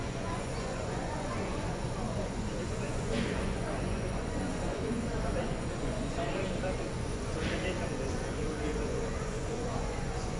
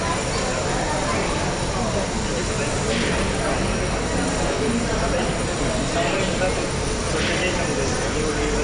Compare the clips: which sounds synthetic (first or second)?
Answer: first